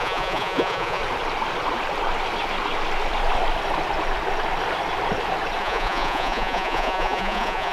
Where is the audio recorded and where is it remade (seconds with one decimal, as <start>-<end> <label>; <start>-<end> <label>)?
0.0-1.0 remade; 1.0-5.6 recorded; 5.6-7.7 remade

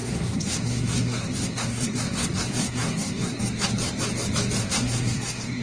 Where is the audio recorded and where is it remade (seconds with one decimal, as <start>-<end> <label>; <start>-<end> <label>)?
0.0-3.4 remade; 3.4-4.6 recorded; 4.6-5.6 remade

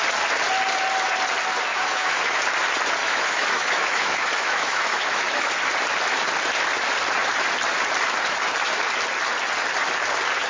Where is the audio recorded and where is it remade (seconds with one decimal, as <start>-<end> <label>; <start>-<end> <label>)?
0.0-1.7 recorded; 1.7-2.4 remade; 2.4-3.0 recorded; 3.0-5.5 remade; 5.5-10.5 recorded

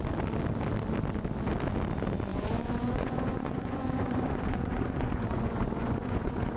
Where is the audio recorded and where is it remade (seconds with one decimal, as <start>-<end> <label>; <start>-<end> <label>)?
0.0-2.3 recorded; 2.3-6.6 remade

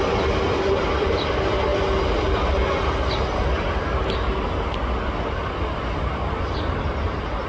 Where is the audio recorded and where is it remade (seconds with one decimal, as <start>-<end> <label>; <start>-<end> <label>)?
0.0-7.5 recorded

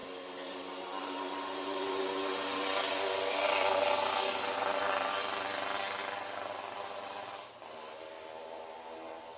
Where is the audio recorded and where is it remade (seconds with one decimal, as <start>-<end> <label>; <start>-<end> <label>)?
0.0-9.4 recorded

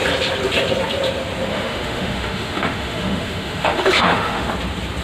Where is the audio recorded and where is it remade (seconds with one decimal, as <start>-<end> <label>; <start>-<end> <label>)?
0.0-1.5 recorded; 1.5-4.5 remade; 4.5-5.0 recorded

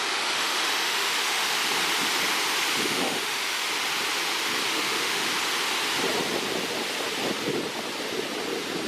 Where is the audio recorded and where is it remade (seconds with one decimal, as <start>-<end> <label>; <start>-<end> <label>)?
0.0-1.6 remade; 1.6-2.8 recorded; 2.8-3.6 remade; 3.6-4.7 recorded; 4.7-5.3 remade; 5.3-8.9 recorded